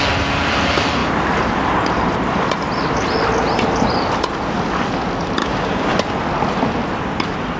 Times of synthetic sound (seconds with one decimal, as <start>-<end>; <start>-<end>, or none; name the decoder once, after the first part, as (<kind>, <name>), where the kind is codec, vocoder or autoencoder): 5.4-6.0 (codec, DAC)